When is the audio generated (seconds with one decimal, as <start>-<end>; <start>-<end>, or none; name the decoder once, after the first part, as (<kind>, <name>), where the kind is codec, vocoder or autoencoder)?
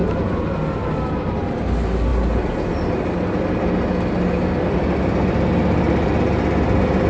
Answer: none